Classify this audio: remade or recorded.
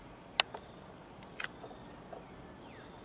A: recorded